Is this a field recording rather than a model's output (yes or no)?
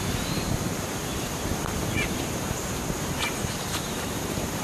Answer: no